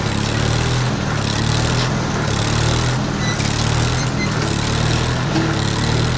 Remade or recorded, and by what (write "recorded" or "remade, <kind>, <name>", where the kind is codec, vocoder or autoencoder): recorded